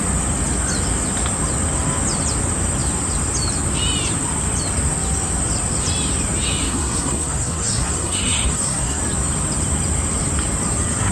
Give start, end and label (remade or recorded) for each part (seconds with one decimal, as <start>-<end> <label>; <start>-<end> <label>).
0.0-6.6 recorded; 6.6-9.0 remade; 9.0-11.1 recorded